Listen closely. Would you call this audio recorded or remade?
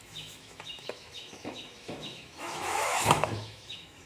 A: remade